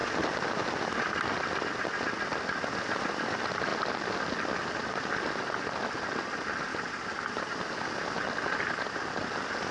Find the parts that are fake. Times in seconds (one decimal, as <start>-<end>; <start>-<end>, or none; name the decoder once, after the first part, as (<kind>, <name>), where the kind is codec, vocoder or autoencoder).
6.7-7.5 (vocoder, BigVGAN v2)